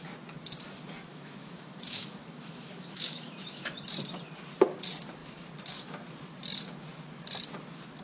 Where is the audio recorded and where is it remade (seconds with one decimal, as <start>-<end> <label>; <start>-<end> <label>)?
0.0-1.1 recorded; 1.1-3.6 remade; 3.6-8.0 recorded